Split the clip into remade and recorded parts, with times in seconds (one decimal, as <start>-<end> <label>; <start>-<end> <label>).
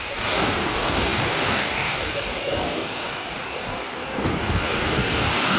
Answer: 0.0-5.6 remade